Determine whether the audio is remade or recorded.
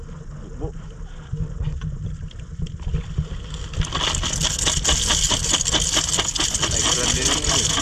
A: recorded